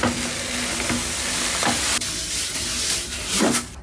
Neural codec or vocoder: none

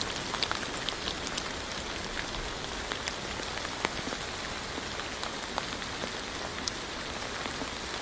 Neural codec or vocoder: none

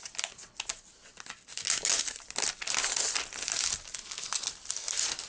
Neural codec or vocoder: none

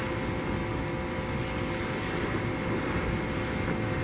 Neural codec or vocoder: none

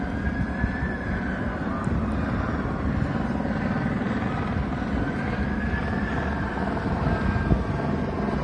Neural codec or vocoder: none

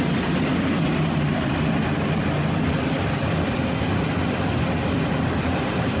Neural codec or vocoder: vocoder, BigVGAN v2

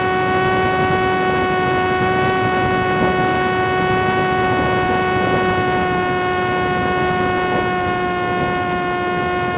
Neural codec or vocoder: none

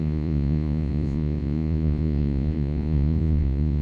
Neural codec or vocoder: vocoder, Vocos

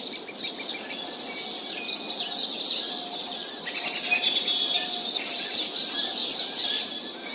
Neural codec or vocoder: none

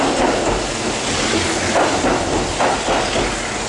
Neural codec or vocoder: none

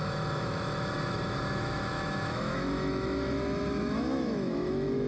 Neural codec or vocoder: autoencoder, DAC-VAE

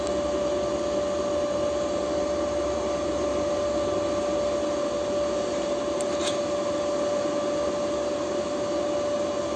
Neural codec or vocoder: none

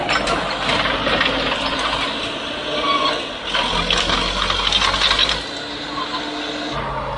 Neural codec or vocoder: none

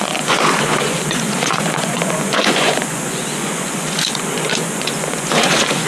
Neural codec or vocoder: vocoder, Vocos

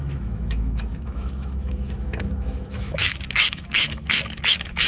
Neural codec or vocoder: autoencoder, DAC-VAE